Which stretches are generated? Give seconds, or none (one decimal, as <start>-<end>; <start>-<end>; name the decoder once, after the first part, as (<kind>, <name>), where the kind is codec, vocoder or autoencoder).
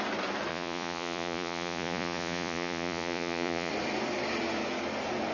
0.5-3.7 (vocoder, Vocos)